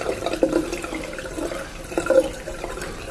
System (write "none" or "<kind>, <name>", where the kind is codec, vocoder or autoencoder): vocoder, BigVGAN v2